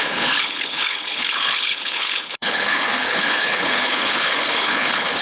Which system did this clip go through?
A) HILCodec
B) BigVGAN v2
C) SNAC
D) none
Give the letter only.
A